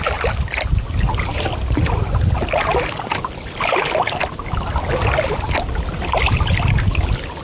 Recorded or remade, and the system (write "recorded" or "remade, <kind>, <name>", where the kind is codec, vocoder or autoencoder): recorded